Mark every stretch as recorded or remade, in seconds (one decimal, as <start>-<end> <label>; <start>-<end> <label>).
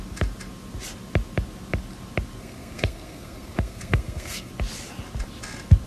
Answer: 0.0-2.4 recorded; 2.4-4.5 remade; 4.5-5.9 recorded